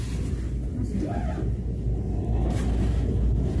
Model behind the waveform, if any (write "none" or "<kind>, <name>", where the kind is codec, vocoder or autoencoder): none